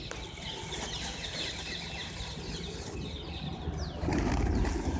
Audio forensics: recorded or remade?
recorded